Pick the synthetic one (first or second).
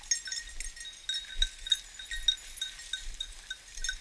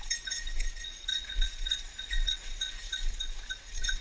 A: second